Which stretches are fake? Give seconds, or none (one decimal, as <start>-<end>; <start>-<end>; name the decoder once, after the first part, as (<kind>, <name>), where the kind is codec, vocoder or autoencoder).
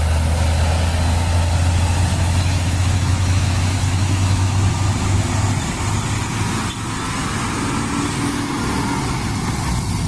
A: 2.1-4.7 (autoencoder, DAC-VAE)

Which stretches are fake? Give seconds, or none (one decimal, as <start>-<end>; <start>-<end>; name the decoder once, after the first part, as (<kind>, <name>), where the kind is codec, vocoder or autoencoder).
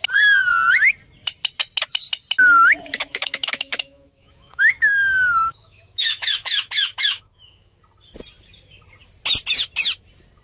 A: 3.0-7.8 (autoencoder, DAC-VAE)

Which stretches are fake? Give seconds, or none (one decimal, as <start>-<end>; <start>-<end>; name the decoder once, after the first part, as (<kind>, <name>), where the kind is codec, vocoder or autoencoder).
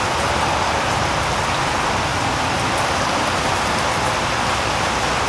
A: none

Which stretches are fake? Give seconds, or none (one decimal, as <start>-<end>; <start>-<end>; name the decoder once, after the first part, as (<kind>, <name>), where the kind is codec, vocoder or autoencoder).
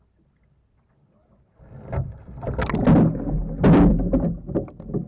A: none